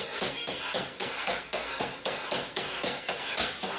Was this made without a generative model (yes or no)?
no